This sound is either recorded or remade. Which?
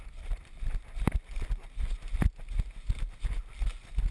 recorded